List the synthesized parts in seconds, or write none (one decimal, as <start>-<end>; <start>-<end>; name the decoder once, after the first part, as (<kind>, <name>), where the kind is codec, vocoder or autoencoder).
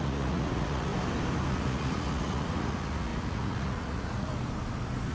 0.0-0.9 (vocoder, Vocos); 1.5-4.3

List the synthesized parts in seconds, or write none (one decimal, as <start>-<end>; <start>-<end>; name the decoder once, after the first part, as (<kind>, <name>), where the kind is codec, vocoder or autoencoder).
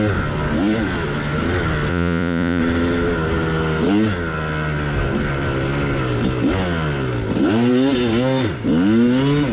1.9-2.6 (vocoder, Vocos)